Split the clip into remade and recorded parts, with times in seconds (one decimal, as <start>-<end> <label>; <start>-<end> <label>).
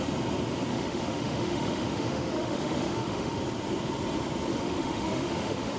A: 0.0-0.7 recorded; 0.7-3.4 remade; 3.4-4.5 recorded; 4.5-5.8 remade